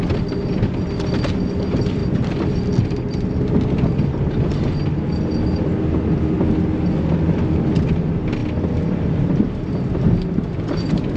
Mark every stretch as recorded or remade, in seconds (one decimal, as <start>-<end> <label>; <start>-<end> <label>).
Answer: 0.0-2.0 recorded; 2.0-2.6 remade; 2.6-11.2 recorded